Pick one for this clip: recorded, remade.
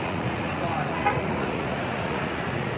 remade